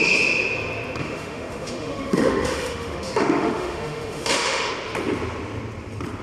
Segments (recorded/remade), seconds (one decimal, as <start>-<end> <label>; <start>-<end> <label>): 0.0-1.0 recorded; 1.0-4.7 remade; 4.7-6.2 recorded